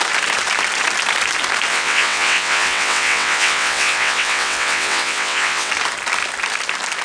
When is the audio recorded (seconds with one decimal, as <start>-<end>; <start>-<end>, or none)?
0.0-1.7; 5.7-7.0